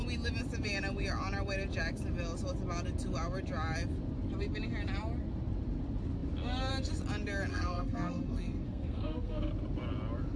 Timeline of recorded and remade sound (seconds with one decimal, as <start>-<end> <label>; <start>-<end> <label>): 0.0-7.5 recorded; 7.5-9.5 remade; 9.5-10.4 recorded